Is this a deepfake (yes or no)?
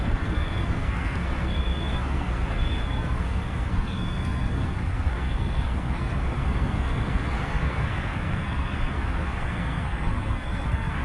yes